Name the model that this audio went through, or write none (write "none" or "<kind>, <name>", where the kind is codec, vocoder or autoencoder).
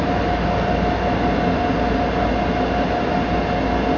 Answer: none